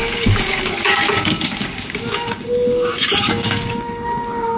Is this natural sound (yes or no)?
no